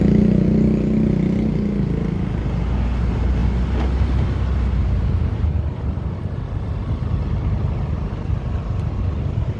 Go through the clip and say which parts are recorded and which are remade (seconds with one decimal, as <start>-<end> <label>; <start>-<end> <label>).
0.0-9.6 recorded